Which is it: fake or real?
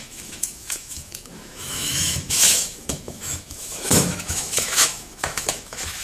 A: fake